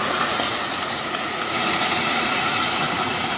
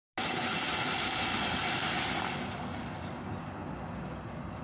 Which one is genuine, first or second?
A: second